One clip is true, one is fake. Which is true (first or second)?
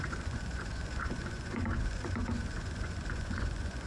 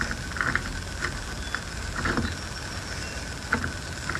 second